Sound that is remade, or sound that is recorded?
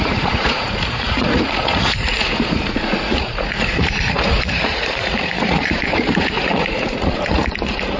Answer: remade